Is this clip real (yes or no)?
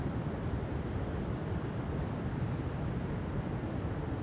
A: no